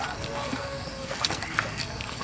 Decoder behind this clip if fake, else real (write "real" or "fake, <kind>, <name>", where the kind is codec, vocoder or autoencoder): fake, codec, SNAC